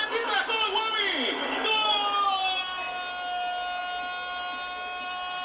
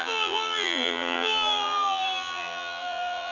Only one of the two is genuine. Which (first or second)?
first